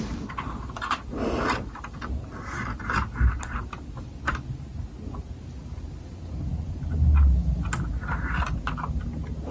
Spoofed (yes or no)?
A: no